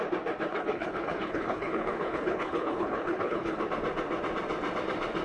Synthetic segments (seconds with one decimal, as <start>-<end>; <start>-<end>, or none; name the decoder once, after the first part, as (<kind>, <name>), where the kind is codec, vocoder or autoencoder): 0.5-3.6 (codec, HILCodec)